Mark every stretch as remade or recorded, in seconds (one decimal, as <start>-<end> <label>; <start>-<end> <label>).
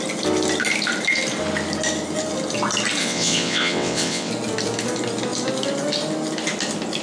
0.0-3.0 recorded; 3.0-4.3 remade; 4.3-7.0 recorded